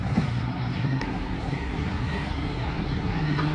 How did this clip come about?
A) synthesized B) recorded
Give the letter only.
A